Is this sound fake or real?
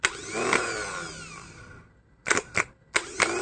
real